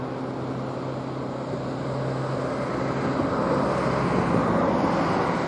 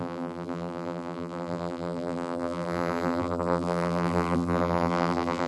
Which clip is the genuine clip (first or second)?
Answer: first